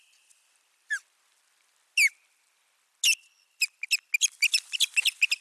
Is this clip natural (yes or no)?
yes